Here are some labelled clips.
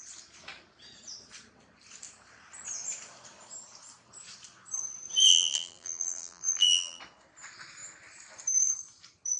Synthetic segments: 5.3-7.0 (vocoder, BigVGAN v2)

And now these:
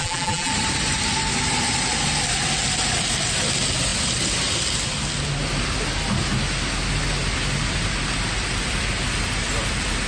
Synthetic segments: 0.0-0.5 (vocoder, BigVGAN v2)

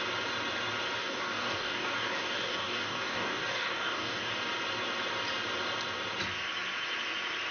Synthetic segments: 1.0-4.3 (codec, DAC)

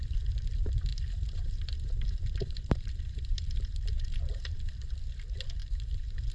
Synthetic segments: 0.9-4.7 (vocoder, BigVGAN v2); 5.6-6.3

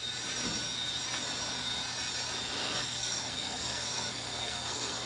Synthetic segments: 2.6-5.1 (codec, SNAC)

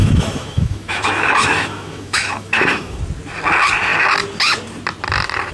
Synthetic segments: 0.0-3.0 (autoencoder, DAC-VAE)